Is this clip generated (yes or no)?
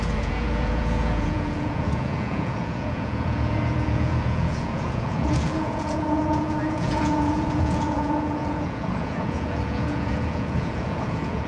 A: yes